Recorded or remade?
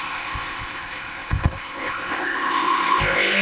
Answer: remade